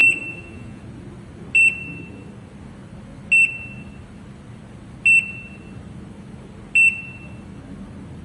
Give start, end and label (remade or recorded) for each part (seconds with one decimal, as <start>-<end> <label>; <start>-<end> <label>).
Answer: 0.0-0.8 remade; 0.8-8.2 recorded